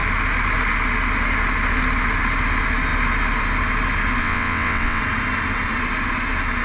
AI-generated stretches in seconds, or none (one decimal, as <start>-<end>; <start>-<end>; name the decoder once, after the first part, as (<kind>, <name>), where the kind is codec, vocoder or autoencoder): 4.2-5.0 (vocoder, WaveNeXt)